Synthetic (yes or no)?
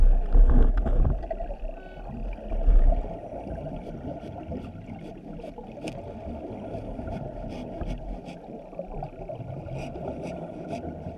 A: no